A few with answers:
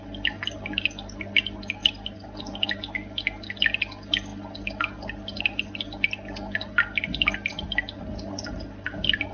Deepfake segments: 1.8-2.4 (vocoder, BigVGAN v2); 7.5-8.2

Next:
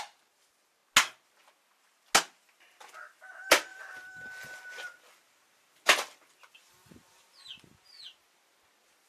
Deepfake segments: 3.7-8.0 (vocoder, BigVGAN v2)

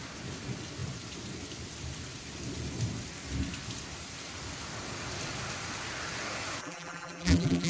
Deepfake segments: 6.6-7.7 (vocoder, BigVGAN v2)

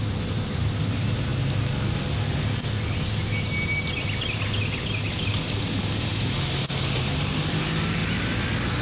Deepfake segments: 6.6-7.6 (vocoder, BigVGAN v2); 8.0-8.8

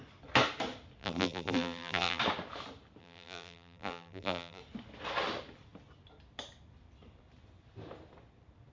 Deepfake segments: 1.0-2.2 (vocoder, BigVGAN v2); 3.0-4.6